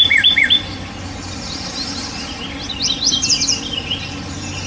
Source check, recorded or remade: recorded